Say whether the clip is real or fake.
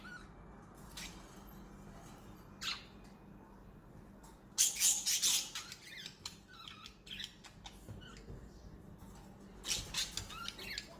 real